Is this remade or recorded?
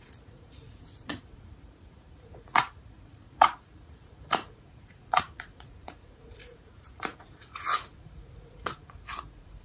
remade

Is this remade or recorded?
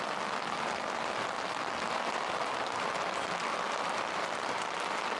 recorded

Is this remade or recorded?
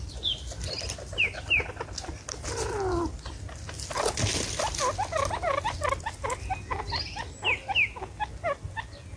recorded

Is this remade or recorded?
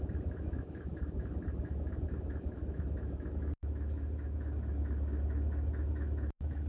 remade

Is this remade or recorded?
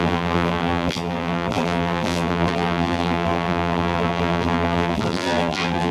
remade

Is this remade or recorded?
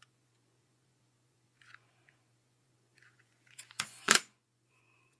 remade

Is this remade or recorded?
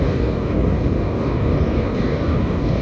remade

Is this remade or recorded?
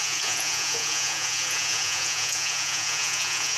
remade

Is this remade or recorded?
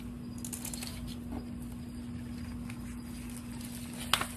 recorded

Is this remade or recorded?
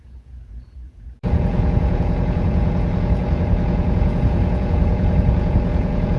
remade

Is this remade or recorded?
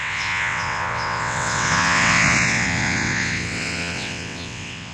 remade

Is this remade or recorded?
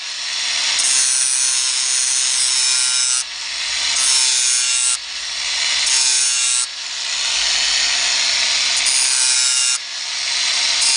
recorded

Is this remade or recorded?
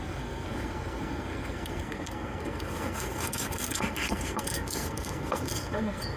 remade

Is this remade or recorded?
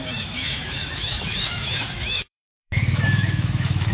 remade